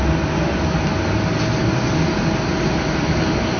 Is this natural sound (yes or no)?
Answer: yes